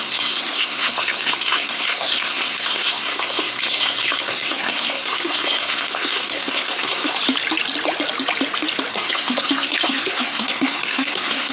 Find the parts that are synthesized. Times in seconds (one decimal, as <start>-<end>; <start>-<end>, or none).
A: 0.0-7.2; 8.9-11.5